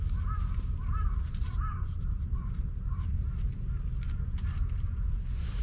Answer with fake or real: real